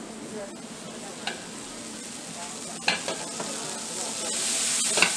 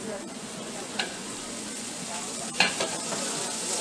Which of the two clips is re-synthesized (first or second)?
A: second